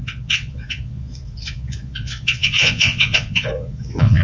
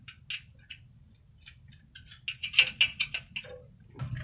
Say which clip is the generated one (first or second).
first